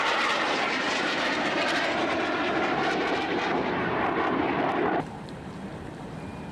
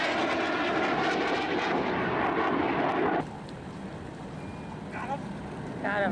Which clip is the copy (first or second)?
first